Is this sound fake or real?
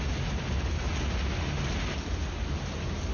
real